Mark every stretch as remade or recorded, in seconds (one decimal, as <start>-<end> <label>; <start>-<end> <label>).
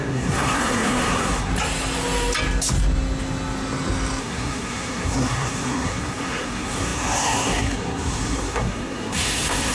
0.0-1.5 remade; 1.5-4.2 recorded; 4.2-9.7 remade